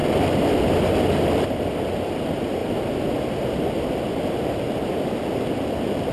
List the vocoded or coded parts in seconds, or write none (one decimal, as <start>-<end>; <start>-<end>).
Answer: none